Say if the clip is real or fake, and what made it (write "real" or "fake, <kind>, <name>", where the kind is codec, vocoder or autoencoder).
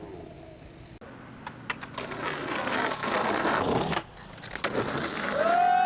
real